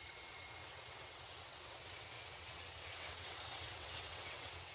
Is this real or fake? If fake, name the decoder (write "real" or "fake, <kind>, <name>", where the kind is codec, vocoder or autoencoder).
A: fake, vocoder, WaveNeXt